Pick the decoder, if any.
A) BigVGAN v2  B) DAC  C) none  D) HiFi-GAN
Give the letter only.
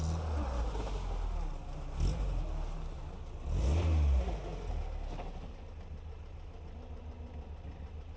C